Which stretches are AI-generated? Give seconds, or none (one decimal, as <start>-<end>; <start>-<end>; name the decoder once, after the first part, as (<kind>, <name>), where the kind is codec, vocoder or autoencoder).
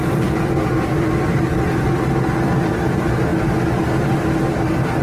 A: none